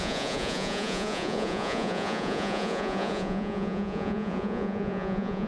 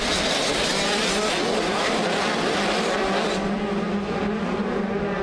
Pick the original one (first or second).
second